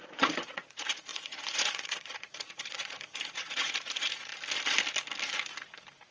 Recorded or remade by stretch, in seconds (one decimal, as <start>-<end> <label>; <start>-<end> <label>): 0.0-4.3 remade; 4.3-6.1 recorded

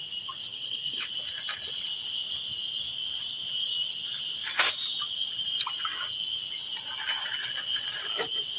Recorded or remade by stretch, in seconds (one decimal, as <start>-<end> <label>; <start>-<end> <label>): 0.0-0.5 recorded; 0.5-1.1 remade; 1.1-8.6 recorded

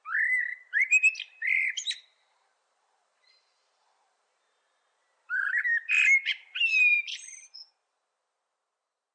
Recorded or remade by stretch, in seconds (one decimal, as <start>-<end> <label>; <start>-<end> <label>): 0.0-0.4 recorded; 0.4-4.6 remade; 4.6-5.0 recorded; 5.0-7.6 remade; 7.6-9.1 recorded

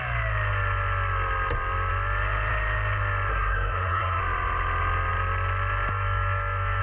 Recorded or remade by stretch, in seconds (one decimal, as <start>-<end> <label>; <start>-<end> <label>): 0.0-3.3 recorded; 3.3-4.2 remade; 4.2-6.8 recorded

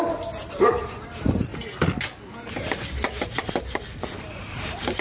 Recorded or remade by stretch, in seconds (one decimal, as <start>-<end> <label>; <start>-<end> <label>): 0.0-1.5 remade; 1.5-2.6 recorded; 2.6-5.0 remade

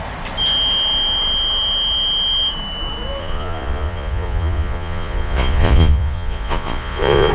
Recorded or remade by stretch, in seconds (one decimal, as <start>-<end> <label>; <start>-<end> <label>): 0.0-3.2 recorded; 3.2-7.3 remade

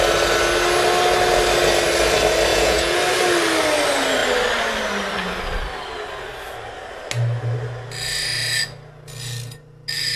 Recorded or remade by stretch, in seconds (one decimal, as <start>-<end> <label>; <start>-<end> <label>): 0.0-2.5 recorded; 2.5-3.0 remade; 3.0-10.2 recorded